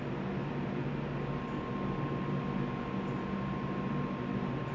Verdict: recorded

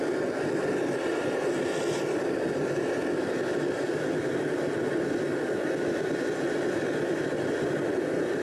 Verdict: recorded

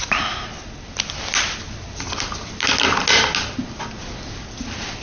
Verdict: recorded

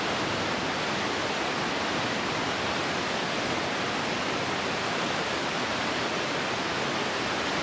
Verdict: recorded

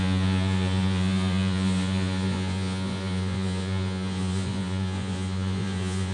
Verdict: remade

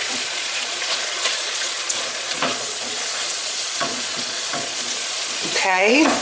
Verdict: remade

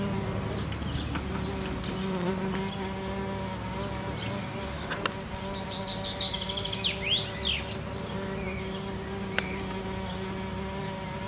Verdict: recorded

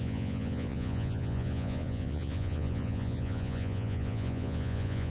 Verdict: remade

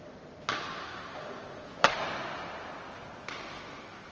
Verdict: recorded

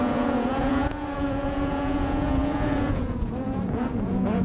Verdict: remade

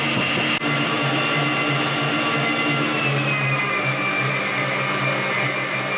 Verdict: recorded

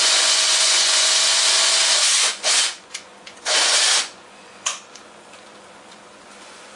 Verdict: remade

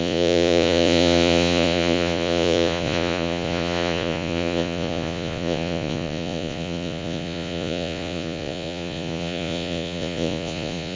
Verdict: remade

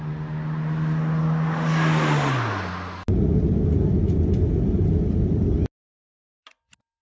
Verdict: recorded